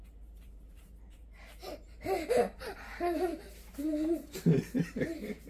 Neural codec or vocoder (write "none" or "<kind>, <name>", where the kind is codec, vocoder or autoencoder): vocoder, BigVGAN v2